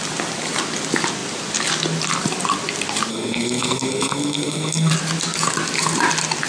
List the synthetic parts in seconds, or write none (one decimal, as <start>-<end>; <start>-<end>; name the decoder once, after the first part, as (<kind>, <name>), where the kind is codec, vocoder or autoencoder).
3.1-4.9 (codec, SNAC)